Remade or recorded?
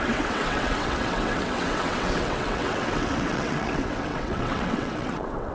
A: remade